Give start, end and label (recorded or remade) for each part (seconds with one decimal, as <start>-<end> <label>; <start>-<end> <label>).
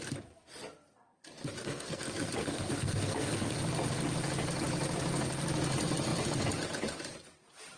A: 0.0-1.6 recorded; 1.6-3.6 remade; 3.6-7.8 recorded